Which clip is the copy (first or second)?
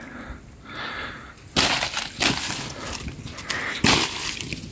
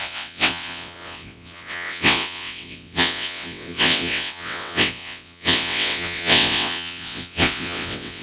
second